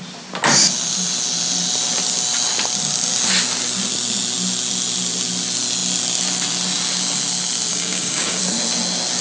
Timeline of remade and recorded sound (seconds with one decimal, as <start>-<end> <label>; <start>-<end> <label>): 0.0-7.7 recorded; 7.7-8.4 remade; 8.4-9.2 recorded

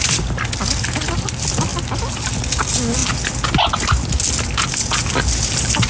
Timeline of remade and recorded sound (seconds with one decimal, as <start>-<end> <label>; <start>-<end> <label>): 0.0-5.9 recorded